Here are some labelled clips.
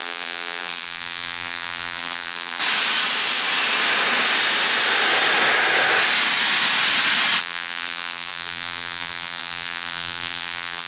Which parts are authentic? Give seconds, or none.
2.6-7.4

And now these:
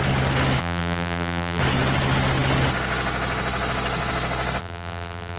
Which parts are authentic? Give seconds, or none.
0.0-0.6; 1.6-4.6

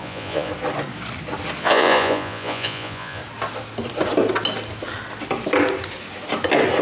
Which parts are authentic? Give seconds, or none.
0.5-1.6; 3.2-6.8

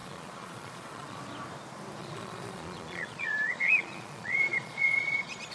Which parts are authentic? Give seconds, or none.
1.2-2.0

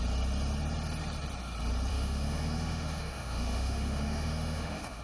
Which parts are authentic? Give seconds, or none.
0.0-1.9

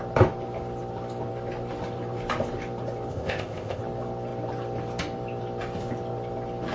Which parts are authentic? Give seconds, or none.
0.0-3.1; 3.8-6.7

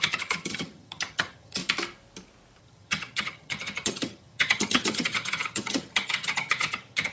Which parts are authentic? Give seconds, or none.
1.6-2.6

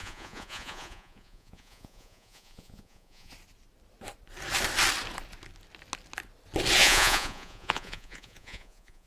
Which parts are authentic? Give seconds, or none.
3.3-6.8